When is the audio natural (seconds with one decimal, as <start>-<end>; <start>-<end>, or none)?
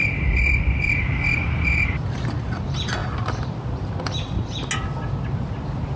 0.0-6.0